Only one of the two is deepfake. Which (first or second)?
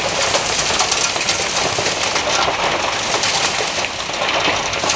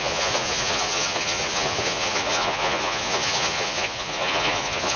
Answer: second